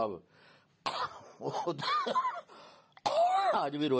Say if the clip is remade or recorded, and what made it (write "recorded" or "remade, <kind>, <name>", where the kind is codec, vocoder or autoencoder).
recorded